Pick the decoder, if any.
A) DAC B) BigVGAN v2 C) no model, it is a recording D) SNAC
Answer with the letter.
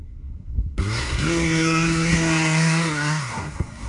D